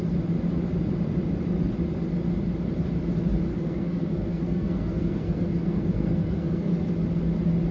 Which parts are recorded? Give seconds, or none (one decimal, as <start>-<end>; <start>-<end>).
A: 0.0-3.5; 6.9-7.7